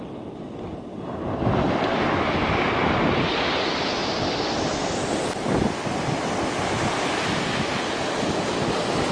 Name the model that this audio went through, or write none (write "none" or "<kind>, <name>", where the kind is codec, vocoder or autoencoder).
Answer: none